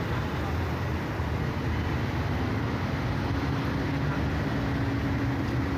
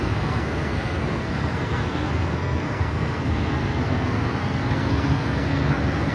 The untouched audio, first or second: first